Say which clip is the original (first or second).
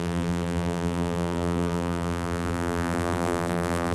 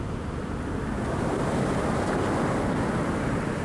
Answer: second